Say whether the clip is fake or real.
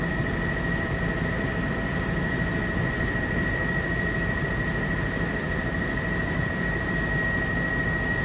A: fake